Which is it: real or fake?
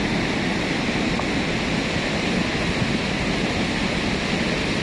real